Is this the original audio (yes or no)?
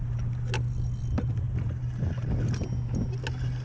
yes